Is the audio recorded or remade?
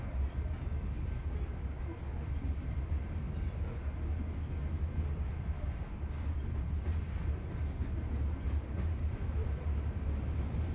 recorded